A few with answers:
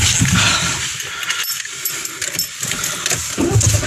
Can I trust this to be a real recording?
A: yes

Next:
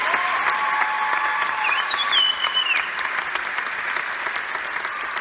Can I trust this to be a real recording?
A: yes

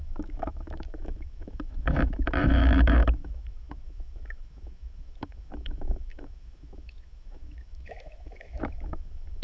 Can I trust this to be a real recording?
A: no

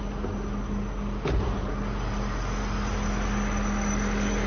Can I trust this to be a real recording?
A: yes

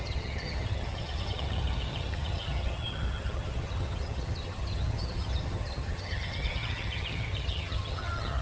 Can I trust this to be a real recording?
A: no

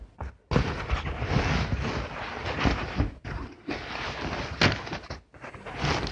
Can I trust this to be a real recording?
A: yes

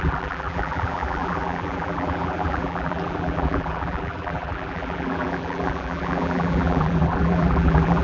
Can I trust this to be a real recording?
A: no